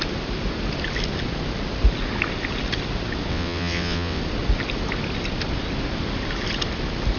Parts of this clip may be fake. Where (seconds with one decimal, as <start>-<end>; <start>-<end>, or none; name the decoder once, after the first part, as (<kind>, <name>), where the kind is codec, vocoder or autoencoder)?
3.3-4.2 (vocoder, WaveNeXt)